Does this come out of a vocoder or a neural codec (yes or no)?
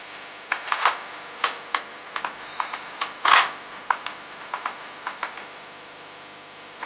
no